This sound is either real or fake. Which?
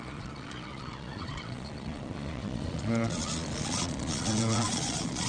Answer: fake